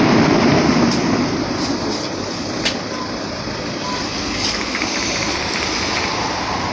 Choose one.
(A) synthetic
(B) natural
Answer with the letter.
B